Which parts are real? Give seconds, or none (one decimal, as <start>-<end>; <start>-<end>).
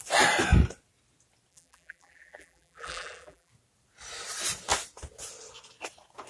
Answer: 0.0-1.5; 3.5-6.3